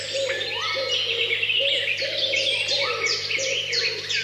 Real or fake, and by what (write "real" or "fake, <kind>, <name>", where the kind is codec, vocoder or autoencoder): real